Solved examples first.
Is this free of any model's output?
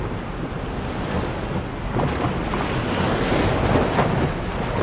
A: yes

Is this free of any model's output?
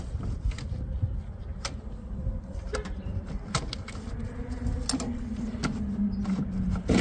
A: yes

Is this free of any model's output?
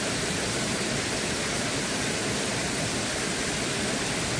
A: yes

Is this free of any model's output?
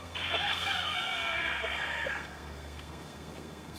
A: no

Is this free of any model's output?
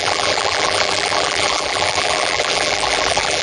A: no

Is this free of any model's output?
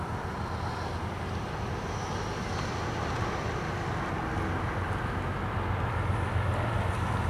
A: yes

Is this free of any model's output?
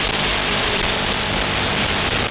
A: yes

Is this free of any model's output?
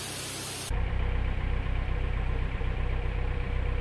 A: no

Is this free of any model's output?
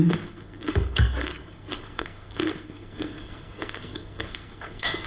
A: no